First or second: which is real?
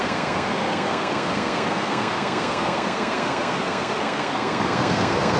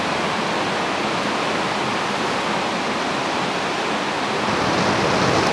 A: second